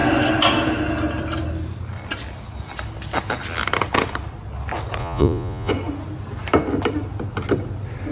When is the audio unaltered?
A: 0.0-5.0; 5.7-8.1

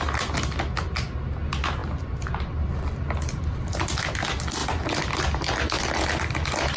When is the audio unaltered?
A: 0.0-6.8

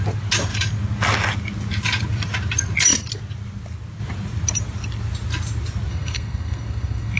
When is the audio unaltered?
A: 0.0-5.9

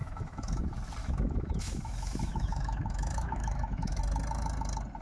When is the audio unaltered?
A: 0.6-1.0; 4.0-5.0

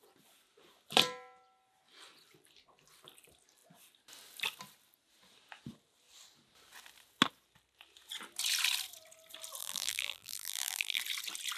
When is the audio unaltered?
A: 0.0-9.6; 11.0-11.6